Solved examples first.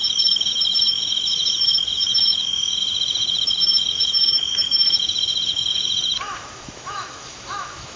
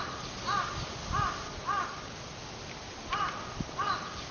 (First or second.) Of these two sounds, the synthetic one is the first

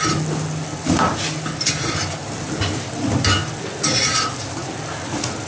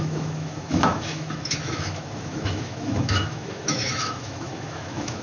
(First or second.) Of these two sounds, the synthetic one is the second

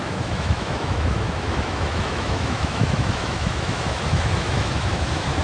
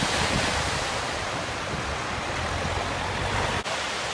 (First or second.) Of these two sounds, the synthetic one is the first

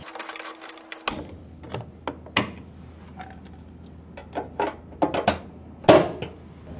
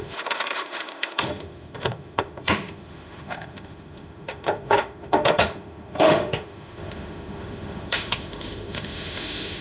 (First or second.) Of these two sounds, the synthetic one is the second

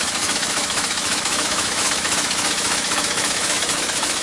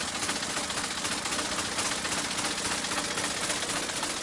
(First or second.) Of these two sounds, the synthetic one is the first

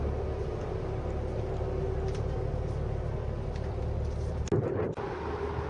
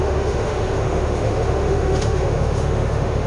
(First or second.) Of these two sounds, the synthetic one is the second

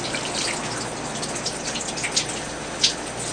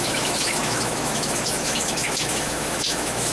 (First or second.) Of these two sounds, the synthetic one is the second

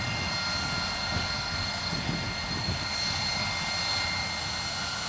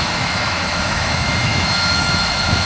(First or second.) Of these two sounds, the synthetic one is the second